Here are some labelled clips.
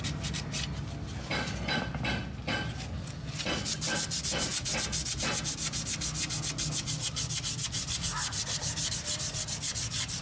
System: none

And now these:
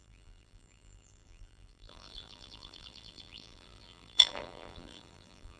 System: vocoder, BigVGAN v2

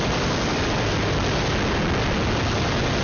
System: none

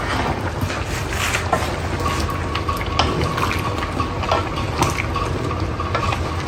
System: none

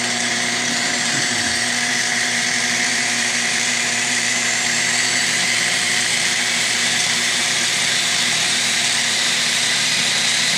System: vocoder, BigVGAN v2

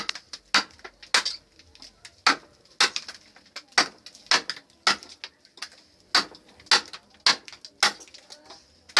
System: none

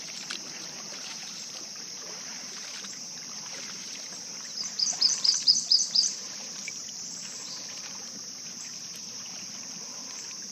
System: vocoder, BigVGAN v2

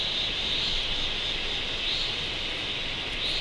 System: none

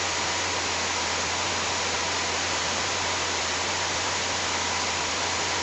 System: none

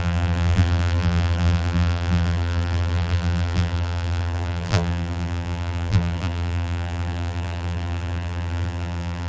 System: vocoder, BigVGAN v2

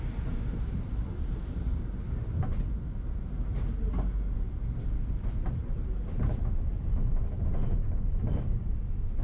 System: none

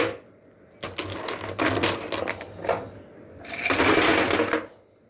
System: none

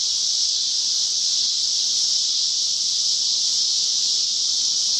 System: vocoder, BigVGAN v2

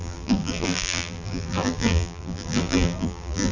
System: vocoder, BigVGAN v2